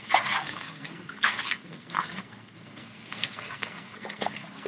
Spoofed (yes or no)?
yes